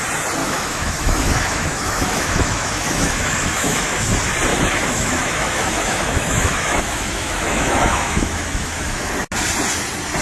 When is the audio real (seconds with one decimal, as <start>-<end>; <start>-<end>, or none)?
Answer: 0.0-0.4; 4.0-4.5; 9.1-10.2